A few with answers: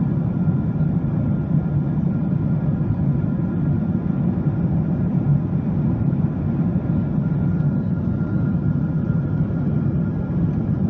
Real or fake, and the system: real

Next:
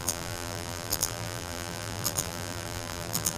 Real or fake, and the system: fake, vocoder, BigVGAN v2